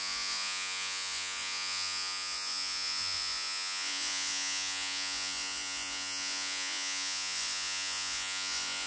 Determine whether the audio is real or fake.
fake